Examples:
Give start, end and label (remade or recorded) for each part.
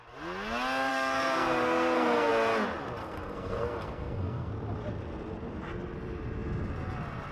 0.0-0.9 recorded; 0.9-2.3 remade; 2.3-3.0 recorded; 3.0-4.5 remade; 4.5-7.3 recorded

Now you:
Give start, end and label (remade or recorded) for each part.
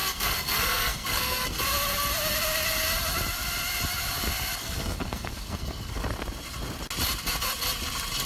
0.0-1.6 remade; 1.6-4.6 recorded; 4.6-6.0 remade; 6.0-8.3 recorded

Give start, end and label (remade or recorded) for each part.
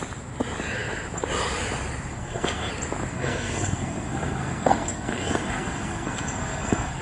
0.0-2.1 recorded; 2.1-2.7 remade; 2.7-3.1 recorded; 3.1-7.0 remade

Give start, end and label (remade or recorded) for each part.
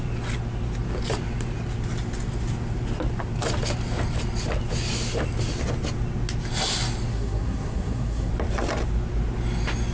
0.0-7.1 recorded; 7.1-8.3 remade; 8.3-9.9 recorded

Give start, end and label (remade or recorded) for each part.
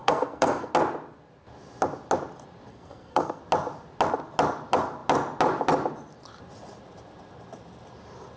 0.0-0.7 remade; 0.7-2.7 recorded; 2.7-3.4 remade; 3.4-8.4 recorded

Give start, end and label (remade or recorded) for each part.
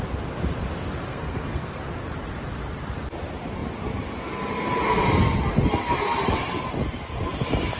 0.0-1.1 recorded; 1.1-1.8 remade; 1.8-7.8 recorded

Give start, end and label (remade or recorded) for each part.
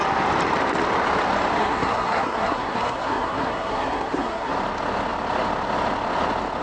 0.0-1.6 recorded; 1.6-4.5 remade; 4.5-6.6 recorded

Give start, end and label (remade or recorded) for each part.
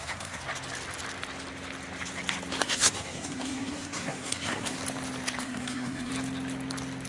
0.0-0.4 remade; 0.4-2.6 recorded; 2.6-4.8 remade; 4.8-5.4 recorded; 5.4-6.1 remade; 6.1-7.1 recorded